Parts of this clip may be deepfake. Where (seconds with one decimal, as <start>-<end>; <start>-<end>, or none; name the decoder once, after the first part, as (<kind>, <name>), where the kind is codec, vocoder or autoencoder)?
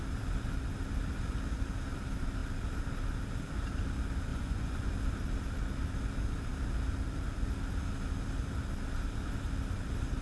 4.3-4.9 (vocoder, Vocos)